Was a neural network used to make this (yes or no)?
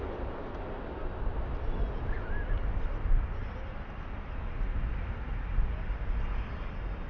no